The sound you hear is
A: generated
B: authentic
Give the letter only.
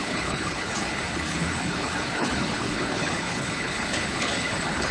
A